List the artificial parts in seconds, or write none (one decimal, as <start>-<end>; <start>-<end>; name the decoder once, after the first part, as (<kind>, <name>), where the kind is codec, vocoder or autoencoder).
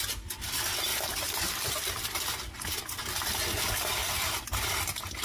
0.9-1.9 (vocoder, BigVGAN v2)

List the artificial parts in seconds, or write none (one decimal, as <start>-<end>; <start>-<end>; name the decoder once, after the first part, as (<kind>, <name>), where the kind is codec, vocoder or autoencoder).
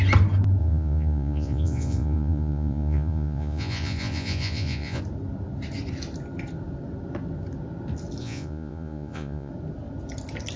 0.6-5.0 (vocoder, Vocos); 8.2-9.5